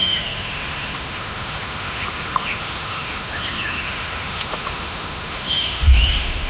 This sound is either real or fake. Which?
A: fake